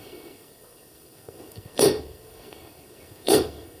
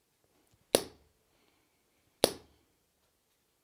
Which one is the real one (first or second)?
second